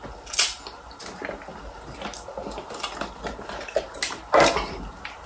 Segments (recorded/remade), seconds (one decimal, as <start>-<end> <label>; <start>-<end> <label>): 0.0-5.3 recorded